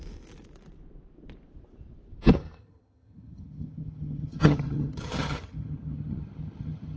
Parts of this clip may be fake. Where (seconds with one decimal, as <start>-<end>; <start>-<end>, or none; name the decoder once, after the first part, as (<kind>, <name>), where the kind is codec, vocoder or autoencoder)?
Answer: 2.6-7.0 (vocoder, HiFi-GAN)

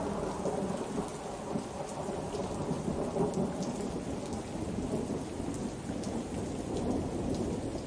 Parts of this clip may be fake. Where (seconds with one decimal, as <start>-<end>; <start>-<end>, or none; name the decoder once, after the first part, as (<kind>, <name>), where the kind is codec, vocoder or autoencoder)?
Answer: none

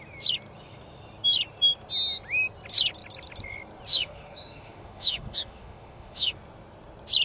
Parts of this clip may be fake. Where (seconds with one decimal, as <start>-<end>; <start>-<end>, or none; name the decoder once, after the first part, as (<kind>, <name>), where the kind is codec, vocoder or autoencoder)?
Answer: 3.9-6.3 (autoencoder, DAC-VAE)

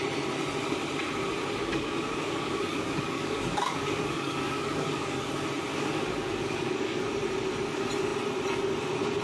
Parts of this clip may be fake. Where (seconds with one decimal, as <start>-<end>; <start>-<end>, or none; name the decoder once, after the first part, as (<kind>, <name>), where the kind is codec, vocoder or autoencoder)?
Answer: 1.6-5.3 (codec, DAC); 5.7-7.0

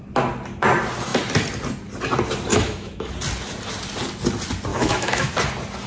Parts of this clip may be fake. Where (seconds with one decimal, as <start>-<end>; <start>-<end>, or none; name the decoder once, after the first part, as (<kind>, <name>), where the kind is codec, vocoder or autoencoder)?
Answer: 2.5-3.1 (autoencoder, DAC-VAE); 4.7-5.3